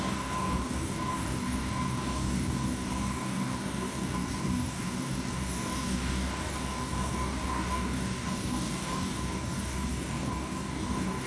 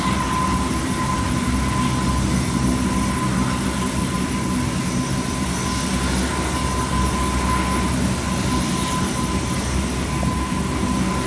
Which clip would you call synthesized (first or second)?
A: first